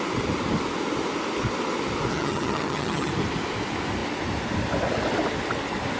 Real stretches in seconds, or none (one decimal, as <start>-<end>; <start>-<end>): 0.0-2.1; 3.1-6.0